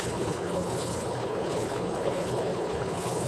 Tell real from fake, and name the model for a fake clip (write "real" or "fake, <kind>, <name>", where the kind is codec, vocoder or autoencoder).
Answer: fake, codec, HILCodec